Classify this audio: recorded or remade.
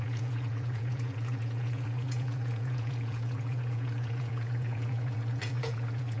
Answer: remade